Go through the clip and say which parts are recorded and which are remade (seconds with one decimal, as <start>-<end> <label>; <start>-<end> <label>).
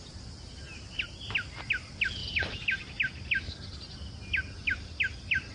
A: 0.0-5.5 recorded